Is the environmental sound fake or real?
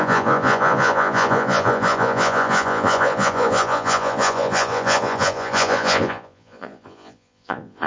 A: fake